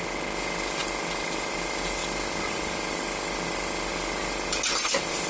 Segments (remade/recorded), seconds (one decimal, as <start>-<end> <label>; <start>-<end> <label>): 0.0-5.3 recorded